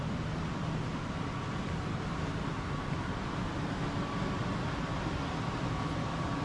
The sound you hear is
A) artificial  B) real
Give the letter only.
B